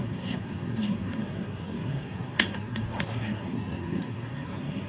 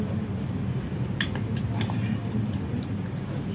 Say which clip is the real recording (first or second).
second